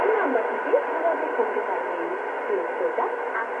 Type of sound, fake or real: real